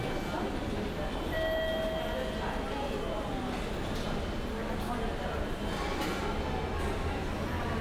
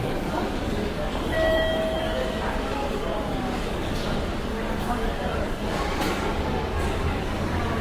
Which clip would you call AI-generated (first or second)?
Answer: second